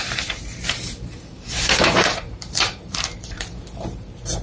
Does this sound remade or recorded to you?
remade